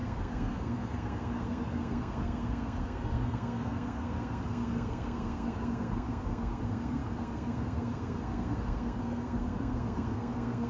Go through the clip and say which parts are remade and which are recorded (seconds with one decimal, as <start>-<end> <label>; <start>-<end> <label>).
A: 0.0-10.7 remade